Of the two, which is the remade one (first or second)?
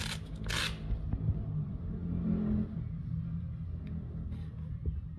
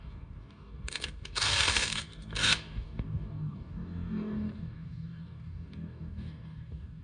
second